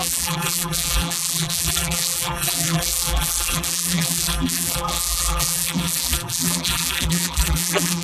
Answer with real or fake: fake